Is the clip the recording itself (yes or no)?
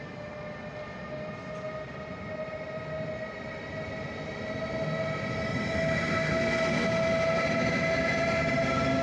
yes